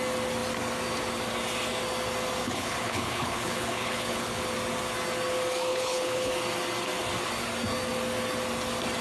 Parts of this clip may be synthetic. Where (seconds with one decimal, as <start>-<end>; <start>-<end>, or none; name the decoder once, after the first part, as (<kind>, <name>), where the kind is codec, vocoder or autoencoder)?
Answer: 2.4-4.5 (codec, HILCodec); 5.7-6.3